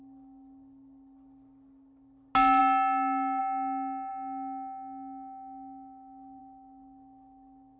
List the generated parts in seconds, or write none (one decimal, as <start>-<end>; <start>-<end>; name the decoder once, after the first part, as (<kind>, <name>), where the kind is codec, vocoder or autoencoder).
none